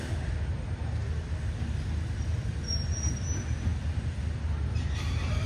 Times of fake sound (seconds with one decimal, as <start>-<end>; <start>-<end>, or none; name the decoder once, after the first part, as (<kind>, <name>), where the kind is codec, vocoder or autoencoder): none